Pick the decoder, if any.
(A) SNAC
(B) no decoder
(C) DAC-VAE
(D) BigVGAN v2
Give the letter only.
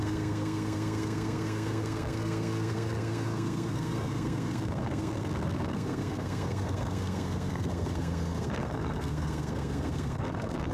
A